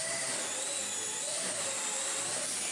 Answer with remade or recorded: recorded